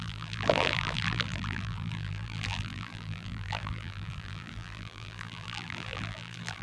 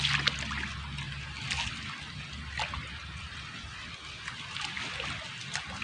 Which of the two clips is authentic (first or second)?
second